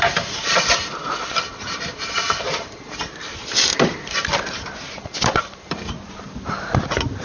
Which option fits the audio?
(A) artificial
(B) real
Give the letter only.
B